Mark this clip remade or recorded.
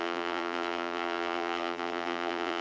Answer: remade